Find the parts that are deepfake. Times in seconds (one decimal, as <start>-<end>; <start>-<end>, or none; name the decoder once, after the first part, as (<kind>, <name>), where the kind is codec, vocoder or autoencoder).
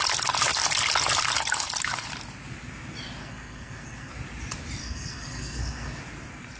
3.2-4.1 (codec, SNAC); 4.8-6.0